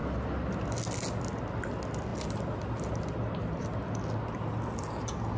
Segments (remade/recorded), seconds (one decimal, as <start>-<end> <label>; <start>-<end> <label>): 0.0-5.4 recorded